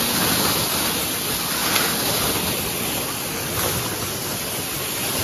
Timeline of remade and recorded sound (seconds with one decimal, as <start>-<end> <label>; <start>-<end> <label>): 0.0-5.2 recorded